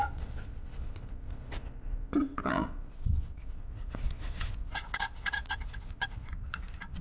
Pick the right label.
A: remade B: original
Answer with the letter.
A